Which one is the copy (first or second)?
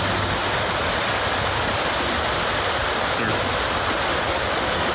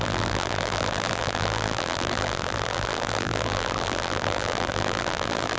second